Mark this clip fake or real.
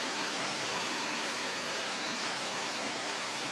fake